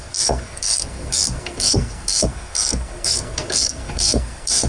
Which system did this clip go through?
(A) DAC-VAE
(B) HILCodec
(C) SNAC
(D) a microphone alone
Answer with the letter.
C